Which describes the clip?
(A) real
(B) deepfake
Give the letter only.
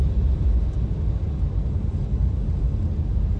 A